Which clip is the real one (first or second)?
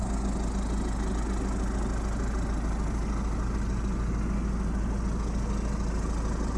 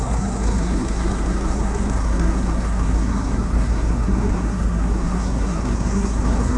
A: first